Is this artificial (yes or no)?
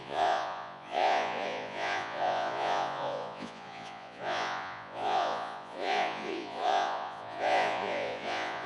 yes